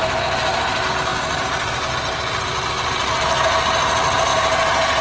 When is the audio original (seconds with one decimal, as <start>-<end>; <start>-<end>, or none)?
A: 0.0-5.0